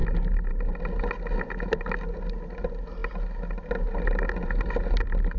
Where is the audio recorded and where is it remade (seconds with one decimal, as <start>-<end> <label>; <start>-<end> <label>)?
0.0-5.4 recorded